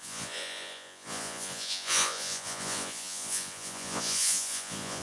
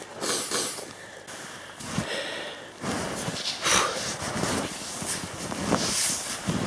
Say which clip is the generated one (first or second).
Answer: first